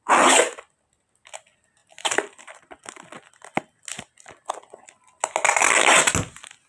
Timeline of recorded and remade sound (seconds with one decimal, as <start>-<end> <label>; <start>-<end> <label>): 0.0-6.7 recorded